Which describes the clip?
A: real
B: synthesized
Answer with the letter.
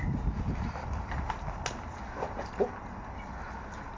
A